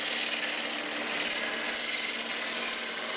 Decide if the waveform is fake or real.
real